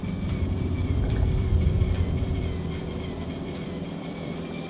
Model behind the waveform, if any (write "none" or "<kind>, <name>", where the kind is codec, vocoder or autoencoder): vocoder, BigVGAN v2